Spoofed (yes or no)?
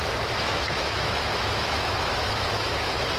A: yes